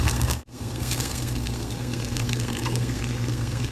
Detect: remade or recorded remade